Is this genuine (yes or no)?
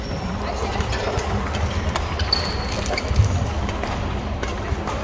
yes